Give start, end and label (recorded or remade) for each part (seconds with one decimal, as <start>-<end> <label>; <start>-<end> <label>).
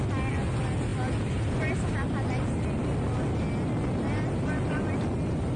0.0-5.6 recorded